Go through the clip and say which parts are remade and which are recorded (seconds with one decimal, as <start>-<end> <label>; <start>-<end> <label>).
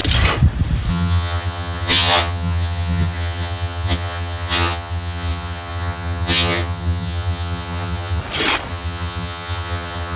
0.0-0.9 recorded; 0.9-8.2 remade; 8.2-8.7 recorded; 8.7-10.2 remade